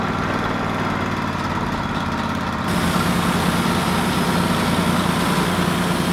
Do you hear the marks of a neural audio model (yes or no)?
no